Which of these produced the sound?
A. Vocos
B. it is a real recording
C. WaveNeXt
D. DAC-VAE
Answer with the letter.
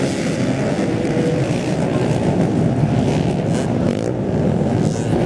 B